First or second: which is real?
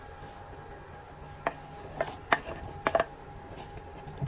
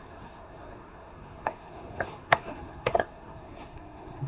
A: first